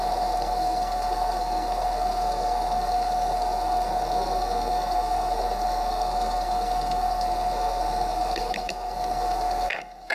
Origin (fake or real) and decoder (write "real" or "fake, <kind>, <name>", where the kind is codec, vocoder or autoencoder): fake, codec, SNAC